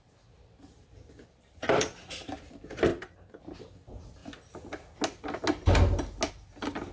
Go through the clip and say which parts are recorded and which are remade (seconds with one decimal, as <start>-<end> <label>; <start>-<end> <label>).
0.0-1.2 recorded; 1.2-2.5 remade; 2.5-2.9 recorded; 2.9-3.4 remade; 3.4-6.9 recorded